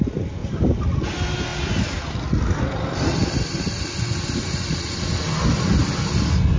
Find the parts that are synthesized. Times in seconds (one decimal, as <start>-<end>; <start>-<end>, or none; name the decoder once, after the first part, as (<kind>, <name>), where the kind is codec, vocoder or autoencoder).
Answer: 0.4-1.0 (vocoder, BigVGAN v2); 3.2-4.9